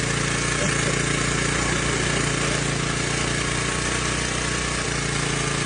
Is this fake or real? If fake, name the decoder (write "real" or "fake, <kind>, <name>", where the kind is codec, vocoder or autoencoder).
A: real